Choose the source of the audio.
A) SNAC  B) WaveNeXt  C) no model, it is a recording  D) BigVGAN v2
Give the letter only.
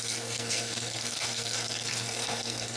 A